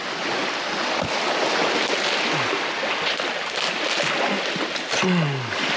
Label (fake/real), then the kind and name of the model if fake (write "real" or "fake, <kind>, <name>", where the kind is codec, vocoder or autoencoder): real